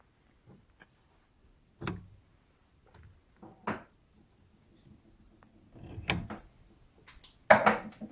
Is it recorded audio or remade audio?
recorded